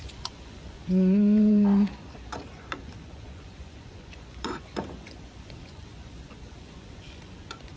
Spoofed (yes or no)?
yes